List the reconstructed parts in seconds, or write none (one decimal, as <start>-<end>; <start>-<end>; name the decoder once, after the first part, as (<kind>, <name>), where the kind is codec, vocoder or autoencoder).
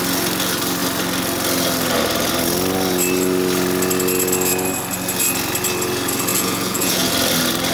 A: 6.3-7.1 (vocoder, Vocos)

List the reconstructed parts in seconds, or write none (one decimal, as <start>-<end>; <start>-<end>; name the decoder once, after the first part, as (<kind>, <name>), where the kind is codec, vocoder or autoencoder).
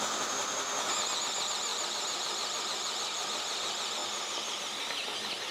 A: 1.7-3.6 (vocoder, BigVGAN v2); 4.0-4.8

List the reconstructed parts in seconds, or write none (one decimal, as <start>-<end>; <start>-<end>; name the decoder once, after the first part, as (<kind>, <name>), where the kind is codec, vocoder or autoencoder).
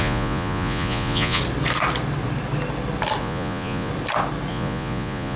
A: 0.0-1.4 (vocoder, Vocos); 3.2-3.9; 4.5-5.4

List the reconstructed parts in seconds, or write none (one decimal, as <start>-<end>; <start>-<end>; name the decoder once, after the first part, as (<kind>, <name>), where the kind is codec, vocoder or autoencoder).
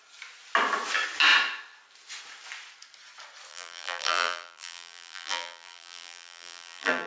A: 3.5-7.1 (vocoder, BigVGAN v2)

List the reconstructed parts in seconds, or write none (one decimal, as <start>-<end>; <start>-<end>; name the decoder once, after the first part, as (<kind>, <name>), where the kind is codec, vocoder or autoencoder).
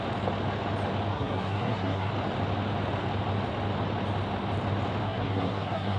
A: 1.1-2.1 (codec, SNAC); 5.0-6.0